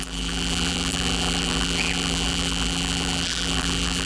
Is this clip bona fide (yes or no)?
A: no